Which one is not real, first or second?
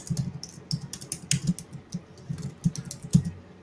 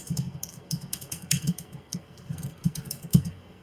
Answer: second